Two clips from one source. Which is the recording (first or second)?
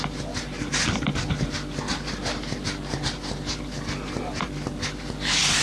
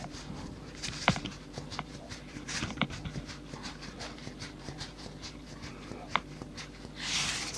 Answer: first